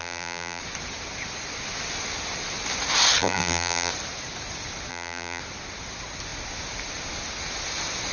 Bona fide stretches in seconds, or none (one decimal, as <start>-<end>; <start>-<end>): 0.6-3.2; 3.9-4.9; 5.4-8.1